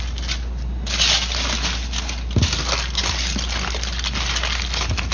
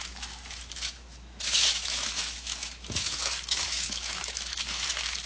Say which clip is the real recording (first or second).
first